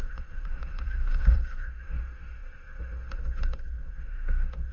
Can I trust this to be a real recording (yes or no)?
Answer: no